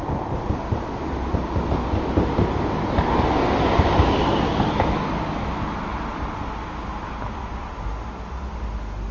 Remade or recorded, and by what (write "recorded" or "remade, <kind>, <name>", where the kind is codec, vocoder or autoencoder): recorded